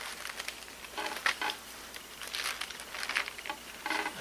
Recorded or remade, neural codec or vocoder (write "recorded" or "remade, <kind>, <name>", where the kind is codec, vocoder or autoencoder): recorded